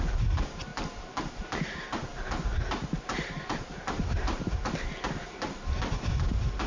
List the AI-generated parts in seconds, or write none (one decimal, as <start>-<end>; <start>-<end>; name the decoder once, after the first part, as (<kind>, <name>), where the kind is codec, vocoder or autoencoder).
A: 2.1-4.7 (vocoder, BigVGAN v2)

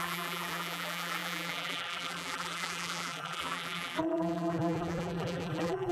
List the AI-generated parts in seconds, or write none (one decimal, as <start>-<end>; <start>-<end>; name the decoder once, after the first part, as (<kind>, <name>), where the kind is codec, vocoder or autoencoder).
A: 0.0-5.9 (vocoder, BigVGAN v2)